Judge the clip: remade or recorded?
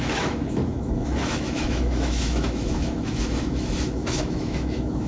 remade